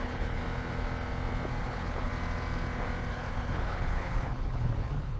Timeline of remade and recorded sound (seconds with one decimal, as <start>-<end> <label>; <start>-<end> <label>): 0.0-0.4 remade; 0.4-1.6 recorded; 1.6-2.1 remade; 2.1-3.1 recorded; 3.1-5.2 remade